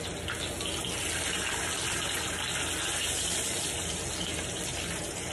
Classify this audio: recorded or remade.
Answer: recorded